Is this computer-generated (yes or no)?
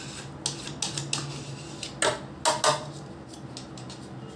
no